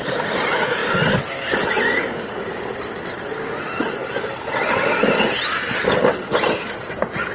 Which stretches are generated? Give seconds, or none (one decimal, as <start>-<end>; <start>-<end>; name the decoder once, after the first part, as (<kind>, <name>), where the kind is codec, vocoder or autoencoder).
none